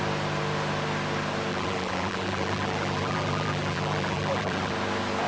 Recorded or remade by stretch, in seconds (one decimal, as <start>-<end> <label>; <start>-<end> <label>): 0.0-1.5 recorded; 1.5-4.7 remade; 4.7-5.3 recorded